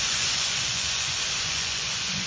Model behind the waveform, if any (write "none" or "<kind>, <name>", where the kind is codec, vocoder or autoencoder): vocoder, Vocos